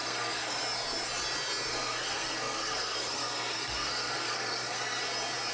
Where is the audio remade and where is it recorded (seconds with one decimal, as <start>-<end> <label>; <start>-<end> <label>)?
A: 0.0-0.6 remade; 0.6-1.7 recorded; 1.7-5.0 remade; 5.0-5.5 recorded

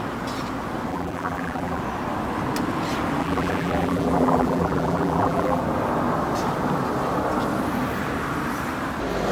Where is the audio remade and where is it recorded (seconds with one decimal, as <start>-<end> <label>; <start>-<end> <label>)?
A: 0.0-0.9 recorded; 0.9-1.8 remade; 1.8-3.2 recorded; 3.2-5.6 remade; 5.6-9.3 recorded

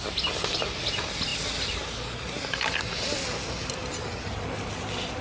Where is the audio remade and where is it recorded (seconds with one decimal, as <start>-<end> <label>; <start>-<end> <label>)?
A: 0.0-5.2 recorded

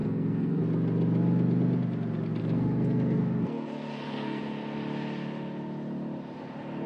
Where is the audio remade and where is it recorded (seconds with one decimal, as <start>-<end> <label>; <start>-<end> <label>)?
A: 0.0-0.6 remade; 0.6-2.4 recorded; 2.4-4.4 remade; 4.4-6.9 recorded

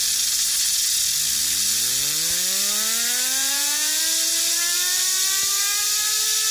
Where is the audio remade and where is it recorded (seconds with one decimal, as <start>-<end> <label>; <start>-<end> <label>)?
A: 0.0-3.4 recorded; 3.4-4.0 remade; 4.0-6.5 recorded

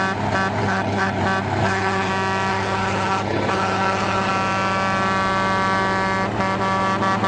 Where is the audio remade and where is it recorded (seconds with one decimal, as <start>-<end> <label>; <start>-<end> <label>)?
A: 0.0-0.6 recorded; 0.6-1.2 remade; 1.2-1.6 recorded; 1.6-2.1 remade; 2.1-2.5 recorded; 2.5-4.3 remade; 4.3-7.3 recorded